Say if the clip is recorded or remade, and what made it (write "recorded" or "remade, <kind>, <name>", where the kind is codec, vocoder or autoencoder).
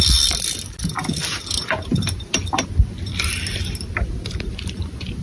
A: recorded